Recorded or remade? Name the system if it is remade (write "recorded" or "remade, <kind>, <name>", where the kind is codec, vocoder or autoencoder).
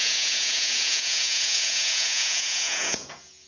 remade, vocoder, Vocos